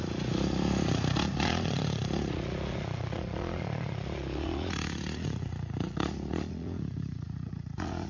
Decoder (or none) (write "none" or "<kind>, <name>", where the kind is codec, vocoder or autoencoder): vocoder, Vocos